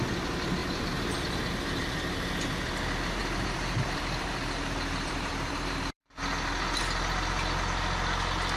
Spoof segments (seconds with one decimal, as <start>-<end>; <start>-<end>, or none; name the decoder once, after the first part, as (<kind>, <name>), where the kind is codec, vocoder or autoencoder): 0.6-1.4 (vocoder, BigVGAN v2); 3.2-6.1